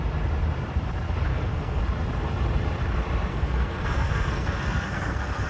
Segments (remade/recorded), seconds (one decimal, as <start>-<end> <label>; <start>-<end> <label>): 0.0-1.3 recorded; 1.3-1.8 remade; 1.8-3.3 recorded; 3.3-5.5 remade